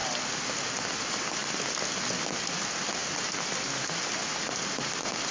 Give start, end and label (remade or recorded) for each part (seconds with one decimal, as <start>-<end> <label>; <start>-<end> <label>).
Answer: 0.0-5.3 recorded